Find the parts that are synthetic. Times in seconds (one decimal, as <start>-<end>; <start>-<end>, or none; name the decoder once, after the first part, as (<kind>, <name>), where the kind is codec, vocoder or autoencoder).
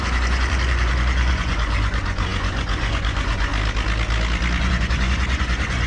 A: 0.0-3.5 (vocoder, Vocos); 4.6-5.9